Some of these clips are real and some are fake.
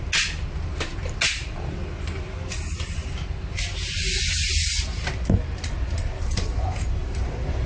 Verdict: real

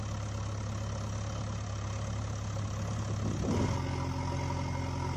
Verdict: real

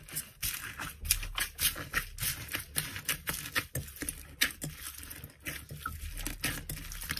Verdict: real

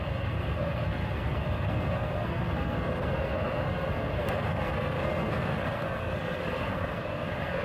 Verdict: fake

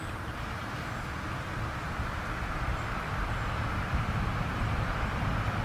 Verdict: fake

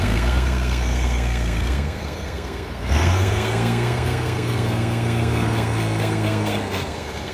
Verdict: fake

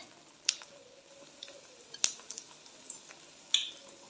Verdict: real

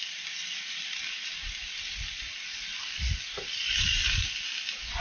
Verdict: real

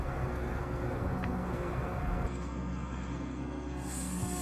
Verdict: fake